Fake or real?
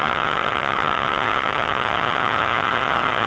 fake